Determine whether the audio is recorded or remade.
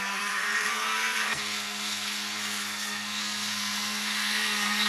remade